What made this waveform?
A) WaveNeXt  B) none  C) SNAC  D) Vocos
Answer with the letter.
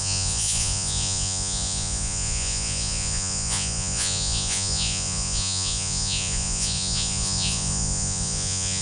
D